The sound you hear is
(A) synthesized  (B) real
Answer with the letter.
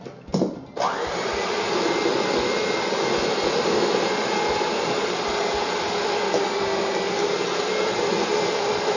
A